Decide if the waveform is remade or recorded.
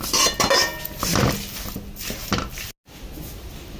recorded